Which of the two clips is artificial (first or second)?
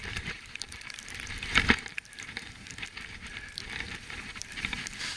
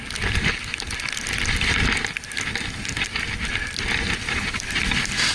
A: first